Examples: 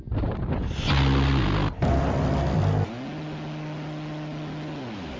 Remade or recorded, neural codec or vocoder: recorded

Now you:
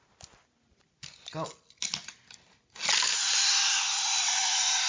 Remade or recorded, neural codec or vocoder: recorded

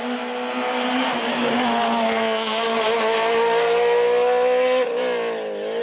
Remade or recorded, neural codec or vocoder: recorded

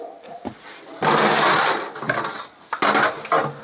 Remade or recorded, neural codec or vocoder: recorded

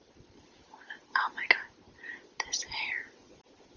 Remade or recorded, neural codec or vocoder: recorded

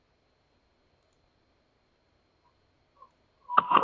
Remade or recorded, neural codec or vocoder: recorded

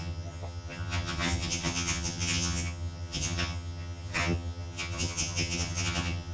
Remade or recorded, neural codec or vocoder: remade, vocoder, HiFi-GAN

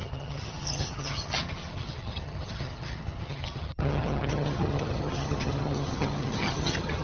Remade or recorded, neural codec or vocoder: remade, vocoder, HiFi-GAN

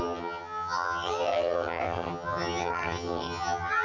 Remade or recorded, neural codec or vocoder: remade, vocoder, HiFi-GAN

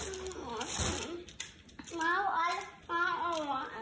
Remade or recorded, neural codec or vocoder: recorded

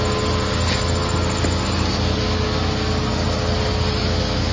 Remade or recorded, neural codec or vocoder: recorded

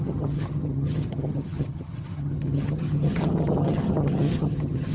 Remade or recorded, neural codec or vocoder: remade, vocoder, HiFi-GAN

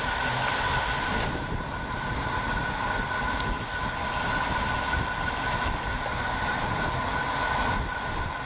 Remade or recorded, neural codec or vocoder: recorded